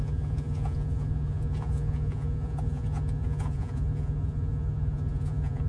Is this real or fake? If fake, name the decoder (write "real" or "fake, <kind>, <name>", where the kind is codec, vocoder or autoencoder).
fake, vocoder, Vocos